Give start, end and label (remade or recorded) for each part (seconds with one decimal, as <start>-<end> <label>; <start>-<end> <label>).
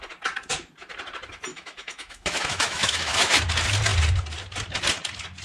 0.0-1.5 recorded; 1.5-3.4 remade; 3.4-5.4 recorded